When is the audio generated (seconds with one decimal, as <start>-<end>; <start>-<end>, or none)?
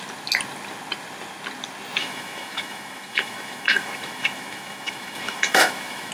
2.0-6.1